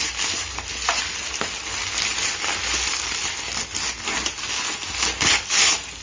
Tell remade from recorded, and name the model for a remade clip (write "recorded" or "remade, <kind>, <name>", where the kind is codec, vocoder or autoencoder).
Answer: recorded